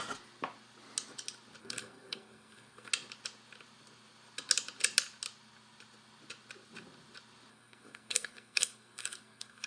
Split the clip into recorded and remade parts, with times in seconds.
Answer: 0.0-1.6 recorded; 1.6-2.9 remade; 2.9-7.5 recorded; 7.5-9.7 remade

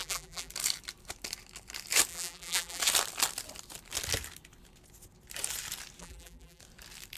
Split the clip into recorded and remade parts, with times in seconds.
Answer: 0.0-0.5 remade; 0.5-2.1 recorded; 2.1-2.8 remade; 2.8-6.0 recorded; 6.0-6.6 remade; 6.6-7.2 recorded

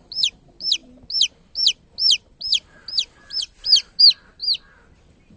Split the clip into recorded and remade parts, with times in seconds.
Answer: 0.0-5.4 remade

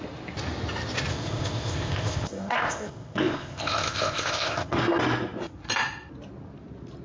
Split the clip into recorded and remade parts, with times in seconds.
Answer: 0.0-1.1 recorded; 1.1-4.8 remade; 4.8-7.0 recorded

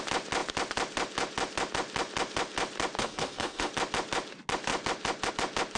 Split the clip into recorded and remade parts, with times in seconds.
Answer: 0.0-3.0 recorded; 3.0-3.7 remade; 3.7-5.8 recorded

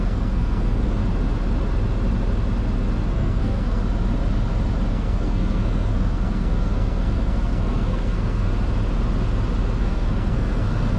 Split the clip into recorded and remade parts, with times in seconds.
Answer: 0.0-1.0 remade; 1.0-3.1 recorded; 3.1-3.8 remade; 3.8-4.9 recorded; 4.9-8.5 remade; 8.5-9.8 recorded; 9.8-11.0 remade

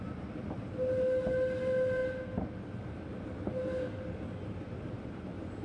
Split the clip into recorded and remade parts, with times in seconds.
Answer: 0.0-5.6 recorded

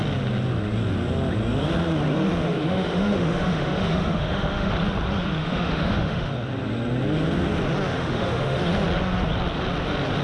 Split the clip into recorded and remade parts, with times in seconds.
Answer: 0.0-2.5 recorded; 2.5-4.7 remade; 4.7-5.4 recorded; 5.4-6.3 remade; 6.3-7.9 recorded; 7.9-8.6 remade; 8.6-10.2 recorded